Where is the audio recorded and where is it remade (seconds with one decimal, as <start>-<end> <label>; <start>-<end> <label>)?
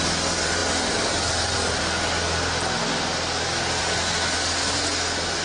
0.0-5.4 recorded